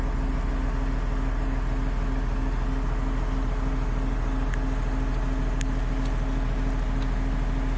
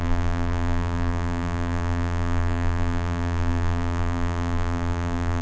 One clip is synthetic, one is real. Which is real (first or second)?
first